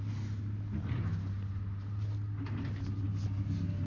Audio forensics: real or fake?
real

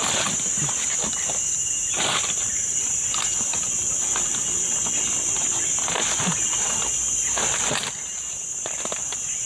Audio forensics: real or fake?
real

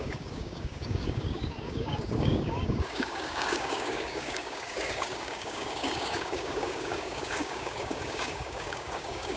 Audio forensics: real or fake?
fake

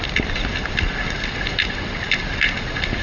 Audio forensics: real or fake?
real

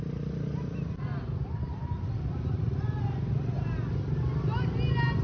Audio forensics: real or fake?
real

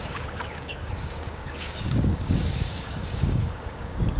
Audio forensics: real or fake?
fake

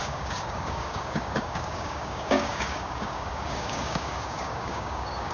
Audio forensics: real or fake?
fake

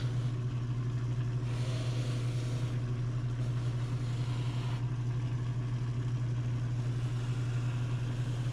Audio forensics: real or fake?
real